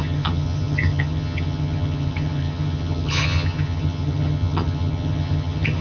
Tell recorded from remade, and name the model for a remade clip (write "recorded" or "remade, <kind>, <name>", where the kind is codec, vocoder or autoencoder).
remade, vocoder, HiFi-GAN